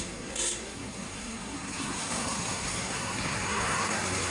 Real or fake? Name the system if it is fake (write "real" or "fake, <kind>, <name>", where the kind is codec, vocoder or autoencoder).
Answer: fake, codec, SNAC